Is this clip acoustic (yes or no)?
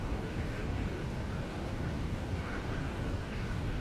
no